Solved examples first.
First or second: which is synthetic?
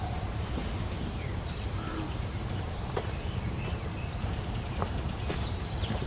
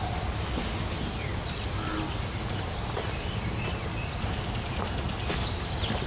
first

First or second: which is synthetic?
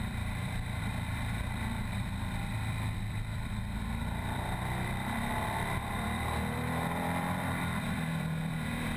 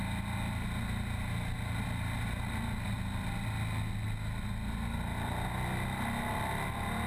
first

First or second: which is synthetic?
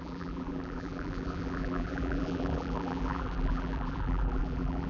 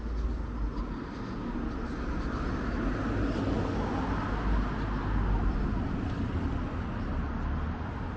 first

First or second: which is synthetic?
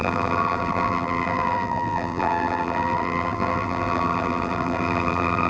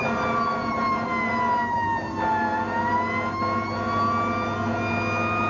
first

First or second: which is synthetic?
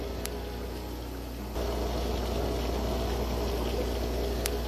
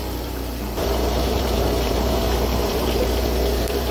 second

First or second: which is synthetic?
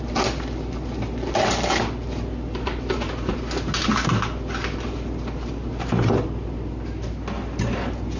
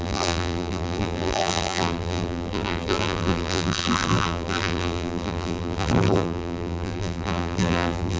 second